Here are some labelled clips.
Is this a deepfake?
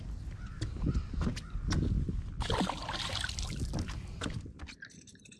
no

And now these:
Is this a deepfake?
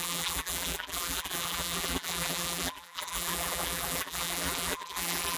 yes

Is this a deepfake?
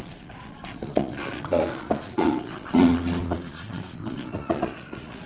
yes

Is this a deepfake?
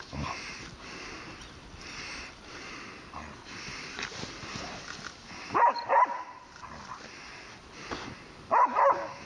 no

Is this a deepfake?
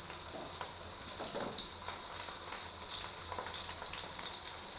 no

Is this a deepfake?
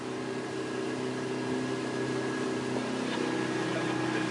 no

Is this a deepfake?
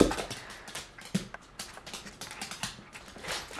no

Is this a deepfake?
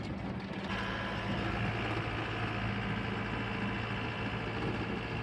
no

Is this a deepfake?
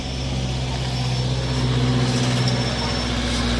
no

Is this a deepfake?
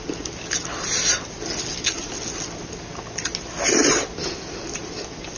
no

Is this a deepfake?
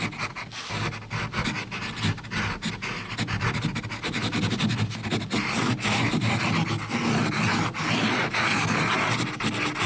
no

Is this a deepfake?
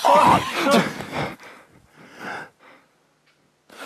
no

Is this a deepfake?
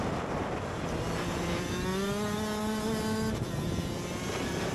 no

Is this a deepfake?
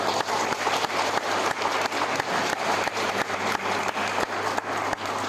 no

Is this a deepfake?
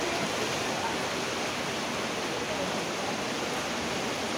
no